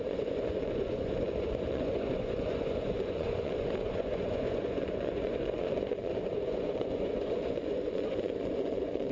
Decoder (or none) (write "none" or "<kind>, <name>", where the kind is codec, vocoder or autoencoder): vocoder, Vocos